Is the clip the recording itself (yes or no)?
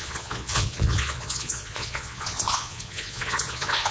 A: no